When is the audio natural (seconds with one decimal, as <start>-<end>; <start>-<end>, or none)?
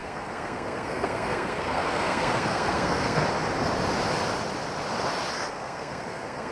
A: 3.2-5.5